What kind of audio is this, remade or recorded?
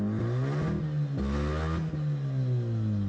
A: recorded